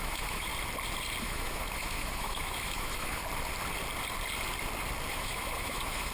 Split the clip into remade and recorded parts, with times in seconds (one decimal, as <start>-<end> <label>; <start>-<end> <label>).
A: 0.0-0.5 remade; 0.5-1.2 recorded; 1.2-3.2 remade; 3.2-5.1 recorded; 5.1-6.1 remade